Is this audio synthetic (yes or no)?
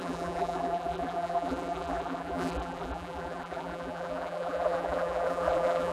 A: yes